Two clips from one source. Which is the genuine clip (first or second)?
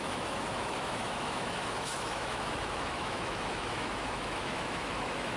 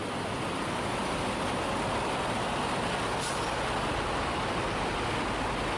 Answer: second